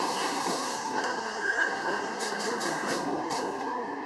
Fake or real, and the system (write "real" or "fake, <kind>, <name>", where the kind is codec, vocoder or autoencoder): fake, codec, SNAC